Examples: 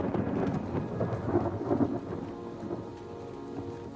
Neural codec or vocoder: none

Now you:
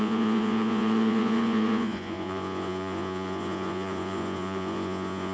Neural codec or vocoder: vocoder, Vocos